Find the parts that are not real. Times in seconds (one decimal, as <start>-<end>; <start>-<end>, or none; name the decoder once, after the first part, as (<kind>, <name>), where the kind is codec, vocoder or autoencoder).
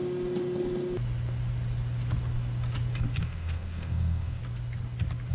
3.2-4.4 (codec, SNAC)